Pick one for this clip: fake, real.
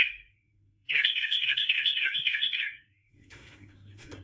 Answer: fake